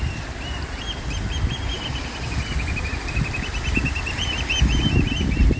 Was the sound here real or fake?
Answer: fake